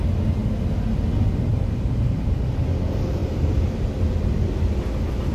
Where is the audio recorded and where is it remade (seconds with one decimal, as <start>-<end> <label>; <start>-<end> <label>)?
0.0-1.5 recorded; 1.5-2.4 remade; 2.4-5.3 recorded